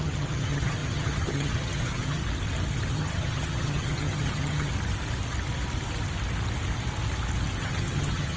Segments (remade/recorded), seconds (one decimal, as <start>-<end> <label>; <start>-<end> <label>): 0.0-2.2 remade; 2.2-2.9 recorded; 2.9-4.7 remade; 4.7-7.6 recorded; 7.6-8.4 remade